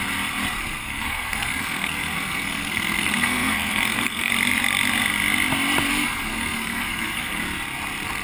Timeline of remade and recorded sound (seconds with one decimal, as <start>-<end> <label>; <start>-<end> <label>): 0.0-0.6 recorded; 0.6-4.3 remade; 4.3-5.9 recorded; 5.9-7.4 remade; 7.4-8.2 recorded